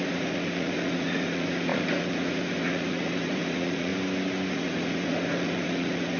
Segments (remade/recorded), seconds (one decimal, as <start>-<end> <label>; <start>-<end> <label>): 0.0-3.9 remade; 3.9-4.5 recorded; 4.5-6.2 remade